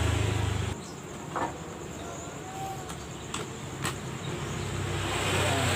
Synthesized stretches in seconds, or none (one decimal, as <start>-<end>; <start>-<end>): none